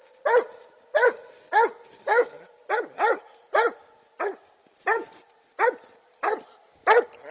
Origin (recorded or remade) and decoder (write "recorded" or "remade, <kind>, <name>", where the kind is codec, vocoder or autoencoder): recorded